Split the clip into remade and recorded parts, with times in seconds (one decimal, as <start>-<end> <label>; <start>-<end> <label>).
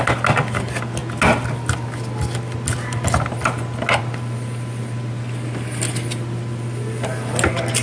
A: 0.0-7.8 recorded